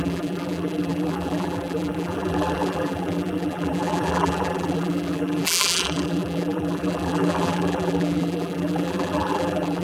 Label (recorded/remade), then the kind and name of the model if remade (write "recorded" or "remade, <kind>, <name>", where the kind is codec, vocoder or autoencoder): remade, vocoder, BigVGAN v2